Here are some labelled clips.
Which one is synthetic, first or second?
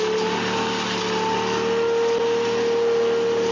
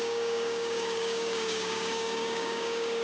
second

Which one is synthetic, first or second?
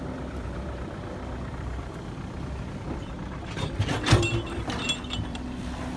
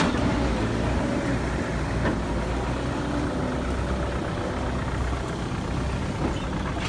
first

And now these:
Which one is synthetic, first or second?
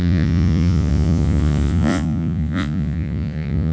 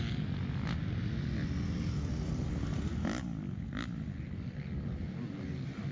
first